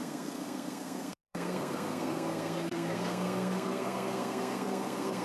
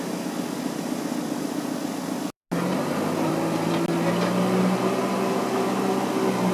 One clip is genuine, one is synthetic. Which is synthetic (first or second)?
first